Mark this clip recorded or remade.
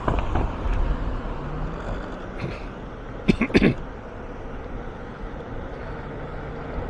recorded